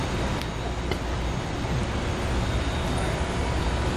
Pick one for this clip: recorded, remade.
recorded